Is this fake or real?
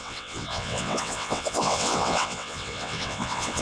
fake